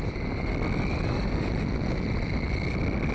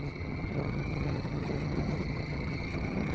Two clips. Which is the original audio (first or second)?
first